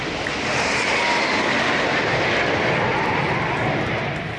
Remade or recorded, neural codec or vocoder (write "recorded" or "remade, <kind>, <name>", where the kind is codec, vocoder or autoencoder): recorded